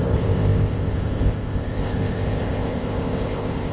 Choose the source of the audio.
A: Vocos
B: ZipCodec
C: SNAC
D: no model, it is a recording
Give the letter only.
B